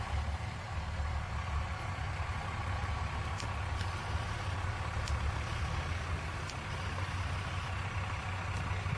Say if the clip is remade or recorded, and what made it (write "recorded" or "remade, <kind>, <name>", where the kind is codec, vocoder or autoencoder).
recorded